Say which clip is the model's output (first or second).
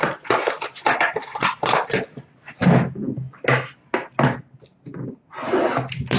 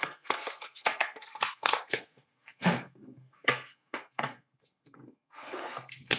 second